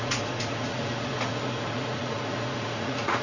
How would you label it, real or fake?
fake